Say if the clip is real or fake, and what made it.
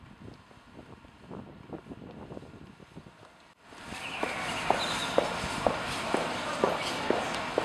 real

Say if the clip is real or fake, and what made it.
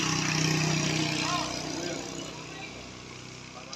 real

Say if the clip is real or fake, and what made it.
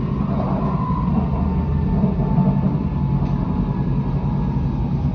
real